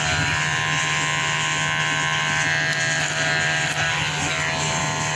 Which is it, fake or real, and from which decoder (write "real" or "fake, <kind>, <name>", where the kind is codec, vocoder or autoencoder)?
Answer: real